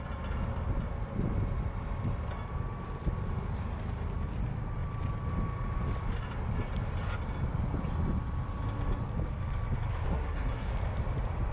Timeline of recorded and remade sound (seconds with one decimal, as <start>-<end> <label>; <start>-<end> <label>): 0.0-10.1 recorded; 10.1-10.7 remade; 10.7-11.5 recorded